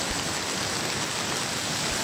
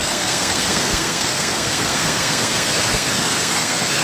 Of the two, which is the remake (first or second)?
second